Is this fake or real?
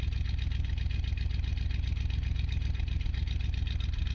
real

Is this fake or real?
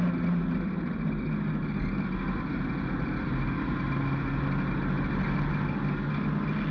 real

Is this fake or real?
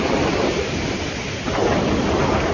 real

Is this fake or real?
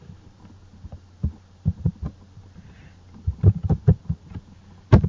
real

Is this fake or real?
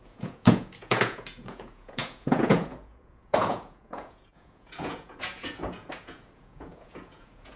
fake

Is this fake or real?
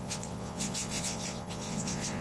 fake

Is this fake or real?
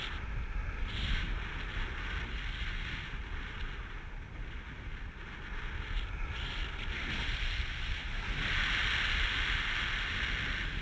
real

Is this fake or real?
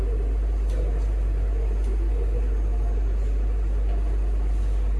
real